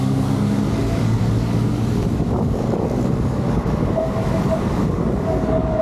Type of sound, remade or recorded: remade